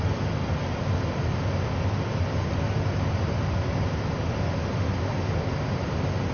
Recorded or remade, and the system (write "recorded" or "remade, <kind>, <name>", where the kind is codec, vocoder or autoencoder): recorded